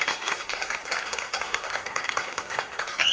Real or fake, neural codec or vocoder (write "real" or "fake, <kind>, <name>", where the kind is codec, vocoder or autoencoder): fake, codec, SNAC